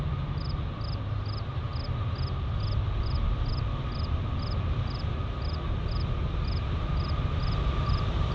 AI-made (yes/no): no